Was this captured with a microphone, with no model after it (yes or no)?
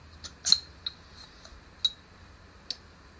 yes